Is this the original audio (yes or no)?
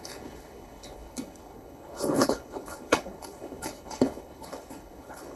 no